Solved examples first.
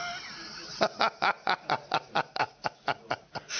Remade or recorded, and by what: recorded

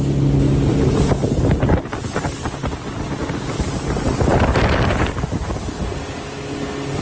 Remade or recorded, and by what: recorded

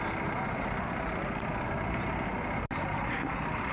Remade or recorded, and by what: recorded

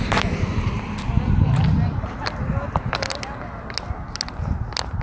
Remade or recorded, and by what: recorded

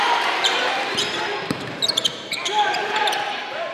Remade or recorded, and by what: remade, vocoder, BigVGAN v2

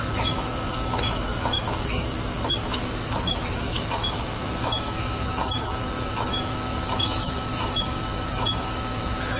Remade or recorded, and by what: remade, autoencoder, DAC-VAE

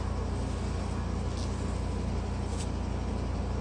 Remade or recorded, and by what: recorded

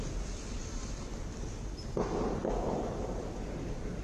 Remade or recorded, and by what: recorded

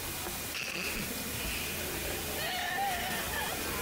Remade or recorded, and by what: recorded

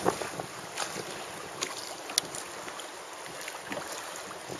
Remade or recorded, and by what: recorded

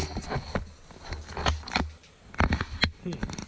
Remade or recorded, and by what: recorded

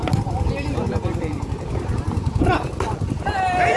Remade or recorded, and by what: recorded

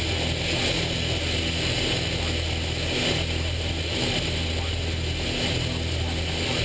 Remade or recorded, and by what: recorded